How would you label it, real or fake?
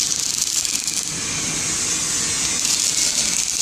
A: real